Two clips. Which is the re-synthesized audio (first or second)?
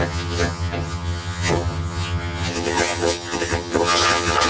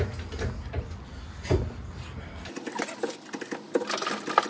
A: first